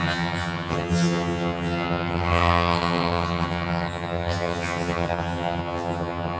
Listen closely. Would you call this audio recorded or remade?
remade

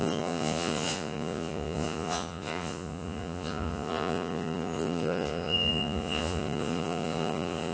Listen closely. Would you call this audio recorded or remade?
remade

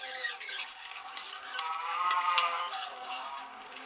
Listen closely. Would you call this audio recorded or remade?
remade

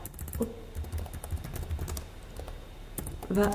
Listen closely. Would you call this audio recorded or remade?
recorded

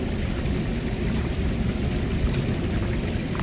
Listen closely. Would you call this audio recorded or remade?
remade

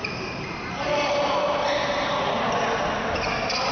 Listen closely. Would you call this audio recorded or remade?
recorded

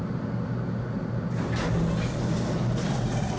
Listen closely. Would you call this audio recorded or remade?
recorded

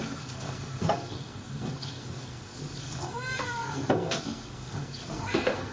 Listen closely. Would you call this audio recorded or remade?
remade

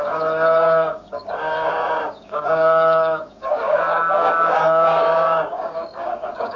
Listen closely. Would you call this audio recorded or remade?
remade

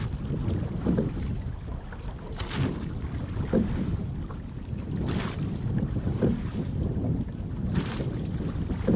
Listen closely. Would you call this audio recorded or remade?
recorded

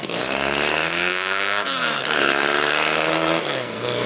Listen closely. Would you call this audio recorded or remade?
remade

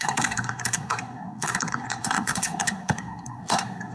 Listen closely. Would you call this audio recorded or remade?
remade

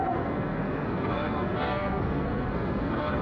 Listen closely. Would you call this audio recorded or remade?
remade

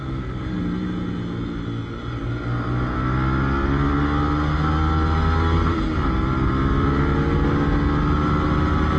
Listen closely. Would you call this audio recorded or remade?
recorded